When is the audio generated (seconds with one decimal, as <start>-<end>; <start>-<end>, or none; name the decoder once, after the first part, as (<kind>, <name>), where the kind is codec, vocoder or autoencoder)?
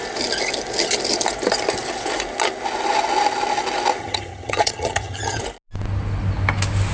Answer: 4.0-5.4 (vocoder, HiFi-GAN)